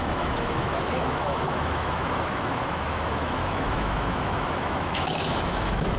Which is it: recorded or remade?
remade